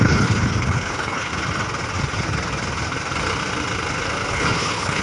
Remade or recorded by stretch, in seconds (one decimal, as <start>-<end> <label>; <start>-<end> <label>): 0.0-1.3 remade; 1.3-4.3 recorded; 4.3-5.0 remade